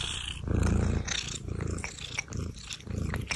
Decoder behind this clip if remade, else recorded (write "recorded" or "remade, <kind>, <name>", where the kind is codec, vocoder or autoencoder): recorded